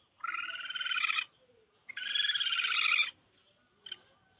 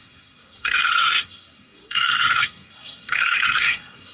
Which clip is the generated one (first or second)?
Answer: second